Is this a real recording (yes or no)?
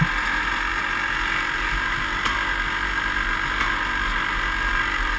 yes